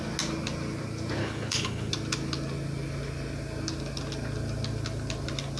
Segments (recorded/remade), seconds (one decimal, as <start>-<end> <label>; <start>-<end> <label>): 0.0-1.2 recorded; 1.2-1.9 remade; 1.9-5.6 recorded